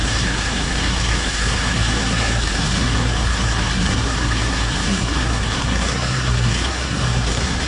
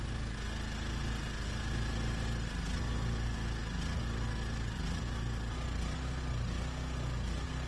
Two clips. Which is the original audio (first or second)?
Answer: second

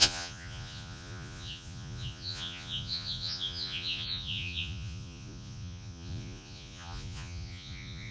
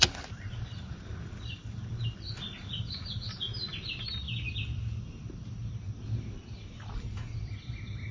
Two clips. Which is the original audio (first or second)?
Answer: second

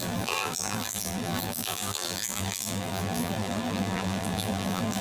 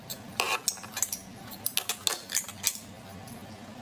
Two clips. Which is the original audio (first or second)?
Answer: second